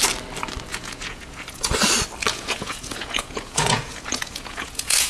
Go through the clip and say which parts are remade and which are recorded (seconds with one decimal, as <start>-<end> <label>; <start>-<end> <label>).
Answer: 0.0-0.7 recorded; 0.7-1.7 remade; 1.7-2.3 recorded; 2.3-5.1 remade